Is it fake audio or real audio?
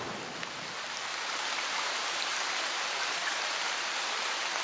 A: real